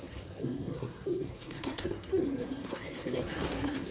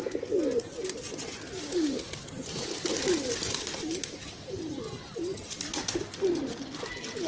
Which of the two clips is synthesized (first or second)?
first